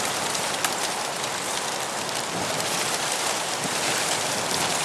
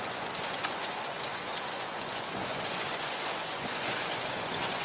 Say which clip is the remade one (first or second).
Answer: second